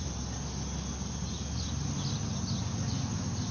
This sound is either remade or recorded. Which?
recorded